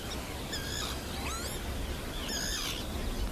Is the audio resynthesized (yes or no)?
no